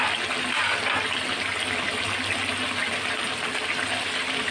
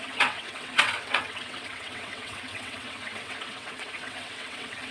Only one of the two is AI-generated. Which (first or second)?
second